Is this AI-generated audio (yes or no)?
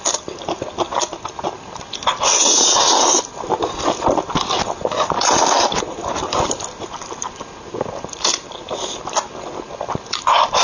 no